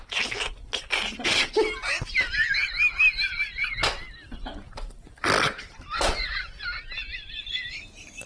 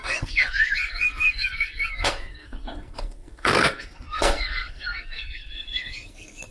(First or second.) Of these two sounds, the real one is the first